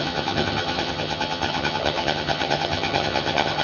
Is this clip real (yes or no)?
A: no